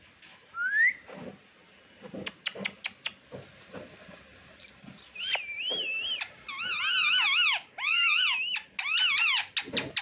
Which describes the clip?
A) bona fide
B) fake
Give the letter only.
A